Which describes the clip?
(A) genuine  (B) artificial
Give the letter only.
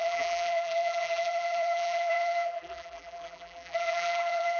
B